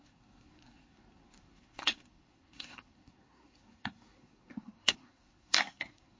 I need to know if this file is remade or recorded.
remade